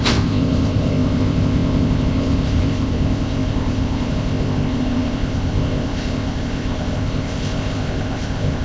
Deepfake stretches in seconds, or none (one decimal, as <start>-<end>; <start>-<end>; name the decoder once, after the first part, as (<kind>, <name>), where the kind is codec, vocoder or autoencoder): 0.0-8.6 (codec, ZipCodec)